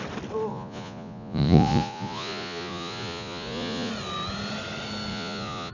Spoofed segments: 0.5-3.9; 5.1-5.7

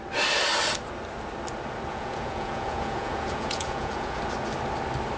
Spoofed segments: 1.9-4.2

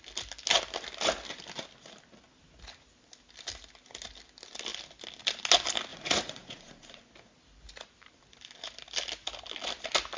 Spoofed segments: 5.9-7.0

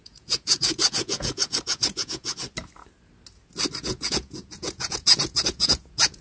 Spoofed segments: 0.0-2.4; 3.8-6.2

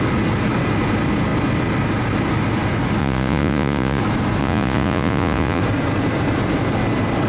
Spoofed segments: 3.0-4.0; 4.4-5.6

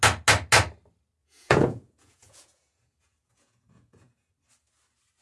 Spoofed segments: 1.2-4.3

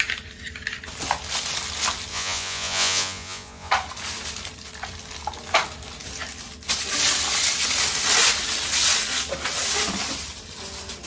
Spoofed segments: 2.1-3.7